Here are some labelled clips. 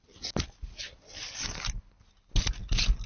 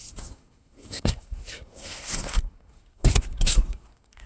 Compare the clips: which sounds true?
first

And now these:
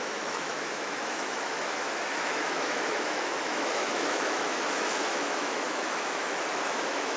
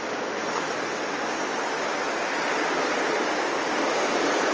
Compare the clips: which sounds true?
second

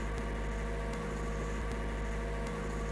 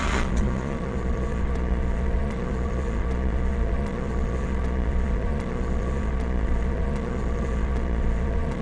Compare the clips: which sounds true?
first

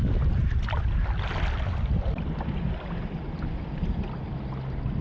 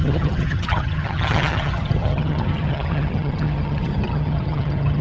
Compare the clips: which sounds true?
first